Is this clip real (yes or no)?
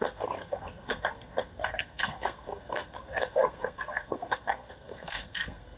no